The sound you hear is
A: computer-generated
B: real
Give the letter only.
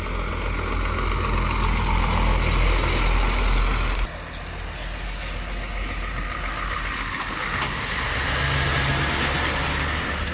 B